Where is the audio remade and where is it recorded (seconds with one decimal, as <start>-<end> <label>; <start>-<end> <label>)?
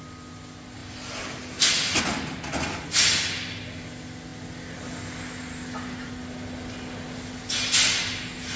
0.0-8.6 recorded